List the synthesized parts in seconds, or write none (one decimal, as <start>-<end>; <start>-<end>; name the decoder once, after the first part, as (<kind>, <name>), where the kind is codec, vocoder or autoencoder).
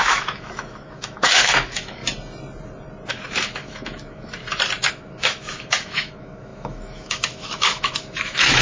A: 0.0-2.0 (autoencoder, DAC-VAE); 3.1-4.4; 4.9-8.6